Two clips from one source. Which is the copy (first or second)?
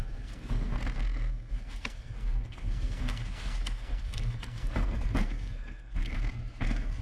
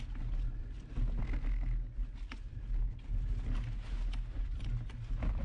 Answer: first